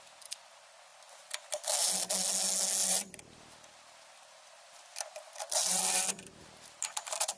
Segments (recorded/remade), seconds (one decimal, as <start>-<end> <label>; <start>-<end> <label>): 0.0-0.9 recorded; 0.9-1.9 remade; 1.9-2.8 recorded; 2.8-3.4 remade; 3.4-4.9 recorded; 4.9-7.4 remade

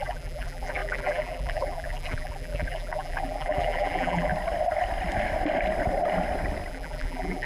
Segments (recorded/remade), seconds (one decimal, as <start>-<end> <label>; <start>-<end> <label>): 0.0-4.3 remade; 4.3-6.7 recorded; 6.7-7.5 remade

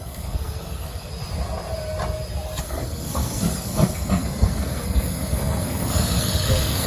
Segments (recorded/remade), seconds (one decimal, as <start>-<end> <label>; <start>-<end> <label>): 0.0-1.1 remade; 1.1-2.6 recorded; 2.6-6.9 remade

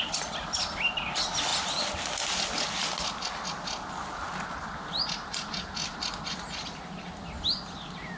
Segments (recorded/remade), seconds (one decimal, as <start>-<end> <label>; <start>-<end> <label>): 0.0-8.2 recorded

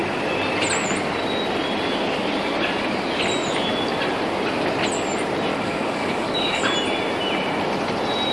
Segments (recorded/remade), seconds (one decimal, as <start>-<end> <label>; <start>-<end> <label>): 0.0-5.5 recorded; 5.5-6.6 remade; 6.6-8.3 recorded

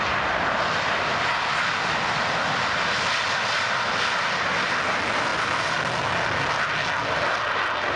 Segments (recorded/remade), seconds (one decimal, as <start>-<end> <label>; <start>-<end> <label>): 0.0-5.3 recorded; 5.3-5.8 remade; 5.8-8.0 recorded